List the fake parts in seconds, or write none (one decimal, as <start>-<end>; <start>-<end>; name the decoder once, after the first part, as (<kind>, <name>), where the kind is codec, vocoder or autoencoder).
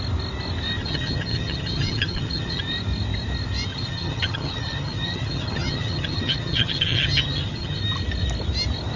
0.8-2.6 (vocoder, HiFi-GAN); 3.7-7.8